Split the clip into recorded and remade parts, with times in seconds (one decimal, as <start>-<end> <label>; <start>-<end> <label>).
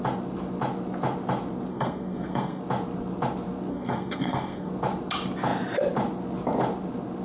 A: 0.0-1.7 recorded; 1.7-2.6 remade; 2.6-3.7 recorded; 3.7-4.7 remade; 4.7-7.2 recorded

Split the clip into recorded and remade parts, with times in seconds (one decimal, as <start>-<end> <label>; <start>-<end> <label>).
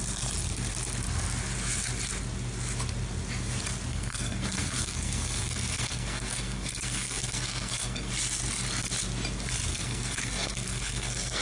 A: 0.0-3.9 recorded; 3.9-8.1 remade; 8.1-9.7 recorded; 9.7-11.4 remade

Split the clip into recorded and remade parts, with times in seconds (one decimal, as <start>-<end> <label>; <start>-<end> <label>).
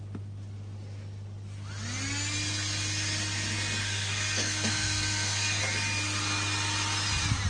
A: 0.0-3.8 recorded; 3.8-5.6 remade; 5.6-7.5 recorded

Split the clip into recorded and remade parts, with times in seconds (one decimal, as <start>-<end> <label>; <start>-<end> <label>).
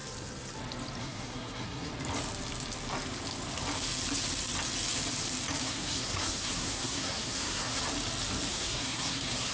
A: 0.0-1.0 recorded; 1.0-1.9 remade; 1.9-5.6 recorded; 5.6-7.8 remade; 7.8-8.5 recorded; 8.5-9.5 remade